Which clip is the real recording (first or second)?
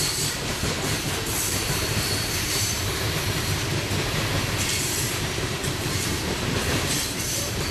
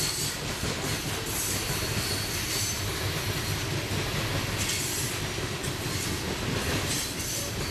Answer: second